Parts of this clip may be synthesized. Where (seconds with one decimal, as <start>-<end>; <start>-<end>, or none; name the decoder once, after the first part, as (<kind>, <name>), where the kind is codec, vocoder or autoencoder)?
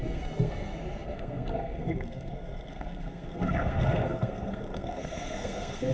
0.0-5.9 (codec, SNAC)